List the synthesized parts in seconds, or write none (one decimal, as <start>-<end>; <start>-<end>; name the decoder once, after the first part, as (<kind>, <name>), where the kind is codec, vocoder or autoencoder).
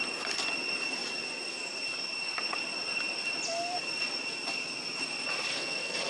5.5-6.1 (codec, SNAC)